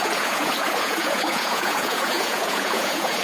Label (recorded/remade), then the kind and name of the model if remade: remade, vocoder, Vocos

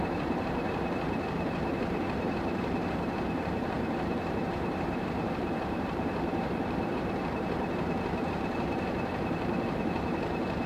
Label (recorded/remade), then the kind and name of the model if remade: remade, vocoder, BigVGAN v2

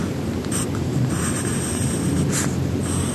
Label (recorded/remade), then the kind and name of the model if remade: recorded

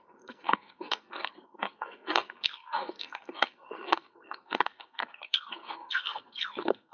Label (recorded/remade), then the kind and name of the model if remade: remade, codec, SNAC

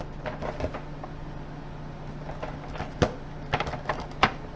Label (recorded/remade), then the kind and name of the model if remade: recorded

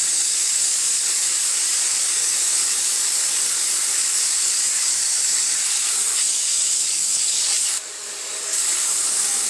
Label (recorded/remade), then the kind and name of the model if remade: remade, codec, DAC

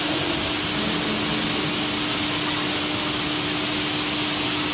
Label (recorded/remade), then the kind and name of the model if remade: recorded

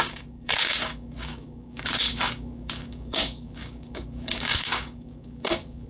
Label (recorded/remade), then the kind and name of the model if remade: remade, codec, DAC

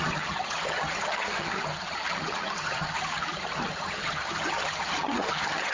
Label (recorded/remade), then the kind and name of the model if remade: remade, vocoder, HiFi-GAN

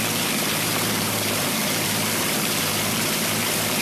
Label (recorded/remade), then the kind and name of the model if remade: remade, vocoder, BigVGAN v2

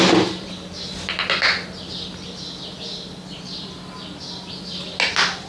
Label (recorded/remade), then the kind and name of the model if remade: recorded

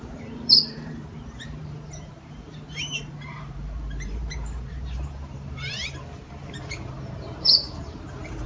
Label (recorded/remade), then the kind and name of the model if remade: remade, vocoder, BigVGAN v2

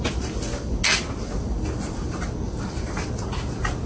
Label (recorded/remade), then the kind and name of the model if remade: recorded